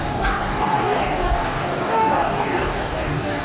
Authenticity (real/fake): fake